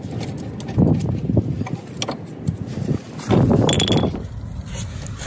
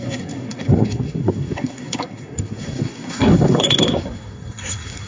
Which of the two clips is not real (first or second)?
second